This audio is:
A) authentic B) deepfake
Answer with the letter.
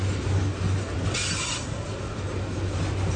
A